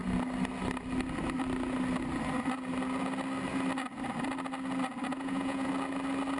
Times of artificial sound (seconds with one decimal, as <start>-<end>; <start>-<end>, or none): 5.1-5.7